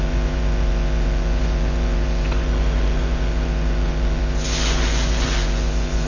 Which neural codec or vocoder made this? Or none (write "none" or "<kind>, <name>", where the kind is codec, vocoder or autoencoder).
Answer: vocoder, Vocos